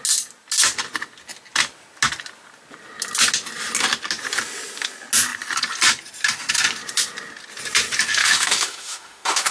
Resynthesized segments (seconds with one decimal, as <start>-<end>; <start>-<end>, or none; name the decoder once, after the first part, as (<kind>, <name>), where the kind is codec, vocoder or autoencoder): 8.2-9.5 (autoencoder, DAC-VAE)